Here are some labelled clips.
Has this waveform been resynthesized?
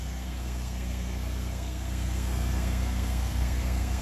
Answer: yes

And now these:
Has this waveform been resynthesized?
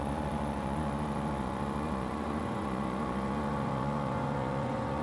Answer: yes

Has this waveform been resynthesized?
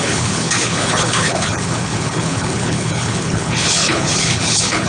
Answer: yes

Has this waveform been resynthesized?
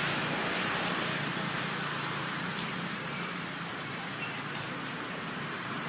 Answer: yes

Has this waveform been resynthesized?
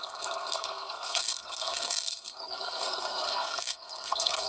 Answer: yes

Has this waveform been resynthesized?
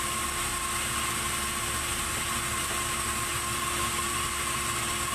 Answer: no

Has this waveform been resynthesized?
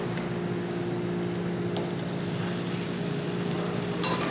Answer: no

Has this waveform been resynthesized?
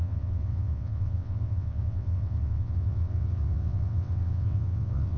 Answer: yes